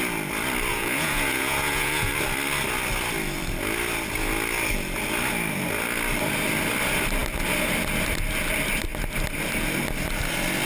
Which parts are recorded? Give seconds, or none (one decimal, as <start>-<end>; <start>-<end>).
0.0-0.7; 2.1-10.6